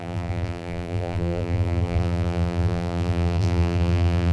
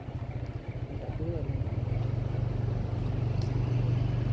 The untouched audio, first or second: second